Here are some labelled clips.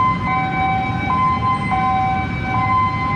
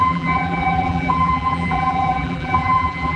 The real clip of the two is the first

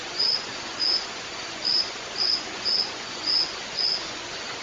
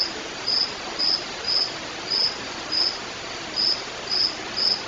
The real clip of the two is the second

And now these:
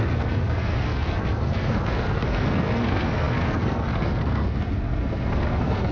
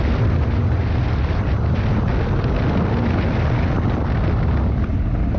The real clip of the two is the second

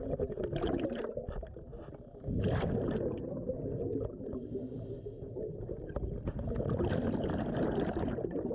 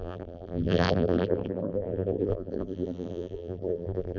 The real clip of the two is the first